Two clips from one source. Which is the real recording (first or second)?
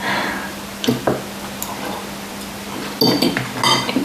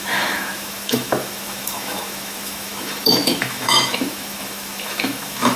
first